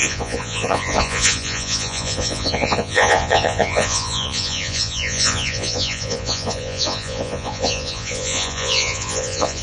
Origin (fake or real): fake